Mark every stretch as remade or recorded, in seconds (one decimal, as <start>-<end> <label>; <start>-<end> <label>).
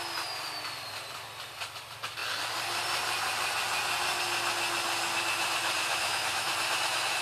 0.0-5.9 recorded; 5.9-6.5 remade; 6.5-7.2 recorded